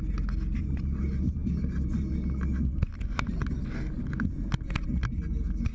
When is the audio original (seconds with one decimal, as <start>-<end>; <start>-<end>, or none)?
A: 0.0-5.7